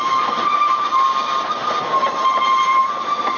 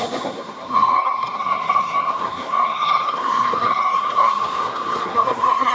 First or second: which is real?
first